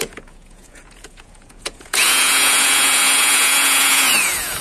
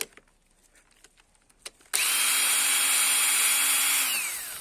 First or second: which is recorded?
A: second